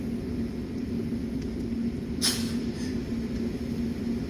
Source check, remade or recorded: recorded